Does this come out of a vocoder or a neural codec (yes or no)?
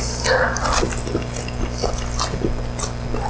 no